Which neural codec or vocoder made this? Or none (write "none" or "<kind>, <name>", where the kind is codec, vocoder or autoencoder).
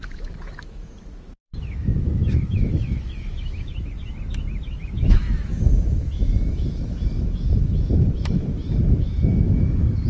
autoencoder, DAC-VAE